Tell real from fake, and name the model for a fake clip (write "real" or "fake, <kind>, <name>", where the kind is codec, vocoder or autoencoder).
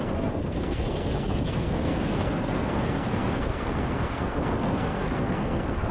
fake, codec, SNAC